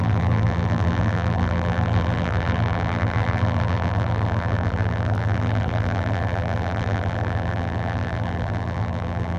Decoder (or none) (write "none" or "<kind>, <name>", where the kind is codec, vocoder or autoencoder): vocoder, BigVGAN v2